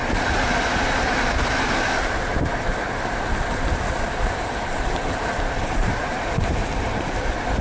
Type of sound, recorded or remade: recorded